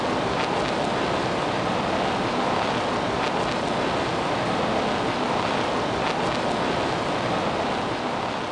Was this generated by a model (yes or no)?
no